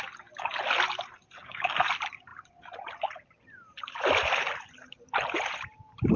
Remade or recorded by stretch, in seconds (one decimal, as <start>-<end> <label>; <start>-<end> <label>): 0.0-1.4 recorded; 1.4-1.9 remade; 1.9-6.2 recorded